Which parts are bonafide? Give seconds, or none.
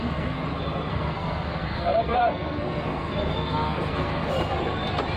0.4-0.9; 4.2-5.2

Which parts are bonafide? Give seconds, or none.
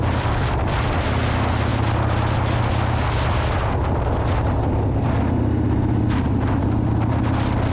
0.0-7.7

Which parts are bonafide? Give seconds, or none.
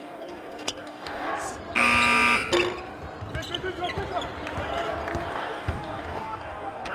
1.3-5.3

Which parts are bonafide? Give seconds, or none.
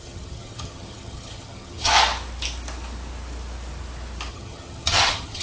1.9-4.3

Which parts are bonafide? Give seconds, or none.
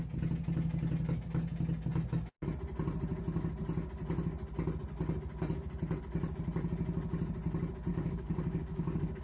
0.0-7.9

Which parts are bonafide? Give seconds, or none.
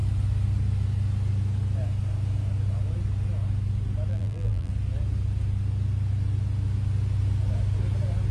0.0-4.1; 4.7-8.3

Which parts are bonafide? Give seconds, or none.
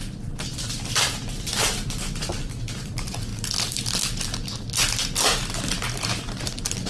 3.3-6.4